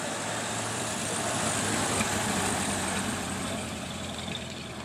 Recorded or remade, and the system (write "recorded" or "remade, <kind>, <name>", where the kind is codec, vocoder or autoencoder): remade, vocoder, BigVGAN v2